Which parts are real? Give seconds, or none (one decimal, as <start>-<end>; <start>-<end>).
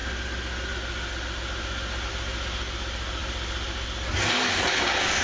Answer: 0.0-5.2